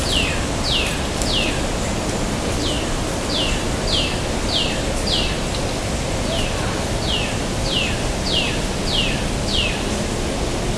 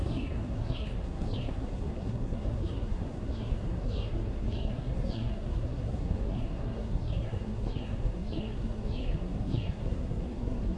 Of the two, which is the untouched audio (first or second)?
first